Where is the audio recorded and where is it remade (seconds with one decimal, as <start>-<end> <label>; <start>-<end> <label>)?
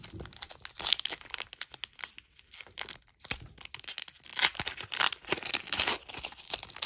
0.0-6.9 recorded